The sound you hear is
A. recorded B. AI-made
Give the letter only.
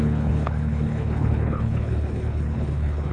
B